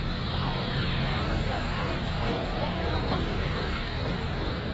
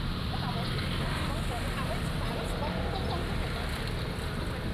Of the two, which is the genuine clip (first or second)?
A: second